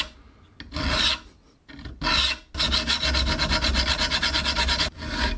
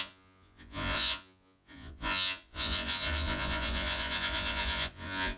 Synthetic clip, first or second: second